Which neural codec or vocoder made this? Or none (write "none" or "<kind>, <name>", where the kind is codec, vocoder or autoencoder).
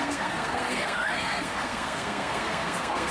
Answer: codec, SNAC